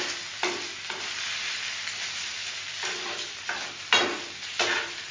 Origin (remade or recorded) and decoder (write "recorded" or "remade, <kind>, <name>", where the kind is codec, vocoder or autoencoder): recorded